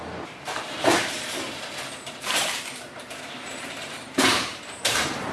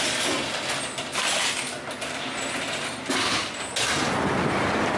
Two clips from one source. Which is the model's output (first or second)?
first